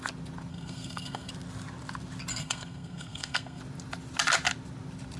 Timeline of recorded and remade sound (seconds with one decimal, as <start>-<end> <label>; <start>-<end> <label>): 0.0-0.5 recorded; 0.5-1.3 remade; 1.3-2.3 recorded; 2.3-3.6 remade; 3.6-5.2 recorded